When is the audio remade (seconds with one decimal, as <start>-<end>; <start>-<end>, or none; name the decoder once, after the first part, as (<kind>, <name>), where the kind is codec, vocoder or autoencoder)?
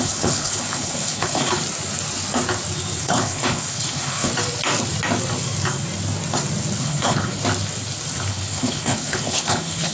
0.0-1.6 (codec, HILCodec); 3.0-4.3; 6.8-7.4; 8.3-9.9